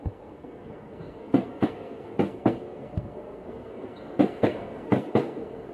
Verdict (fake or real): fake